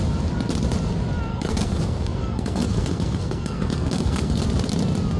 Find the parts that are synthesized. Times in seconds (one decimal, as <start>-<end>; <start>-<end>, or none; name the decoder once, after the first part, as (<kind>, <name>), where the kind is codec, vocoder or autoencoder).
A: 1.3-4.4 (codec, SNAC)